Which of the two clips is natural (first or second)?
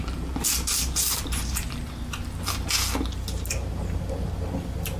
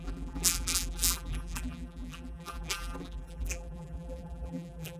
first